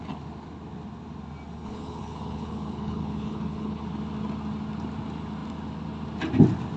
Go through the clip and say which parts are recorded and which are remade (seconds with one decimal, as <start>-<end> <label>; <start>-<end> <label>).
0.0-1.6 recorded; 1.6-3.8 remade; 3.8-6.8 recorded